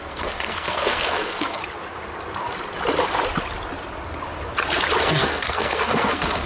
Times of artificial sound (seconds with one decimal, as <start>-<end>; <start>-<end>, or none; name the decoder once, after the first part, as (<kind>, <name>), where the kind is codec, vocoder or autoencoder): 0.0-1.6 (codec, SNAC); 5.0-6.5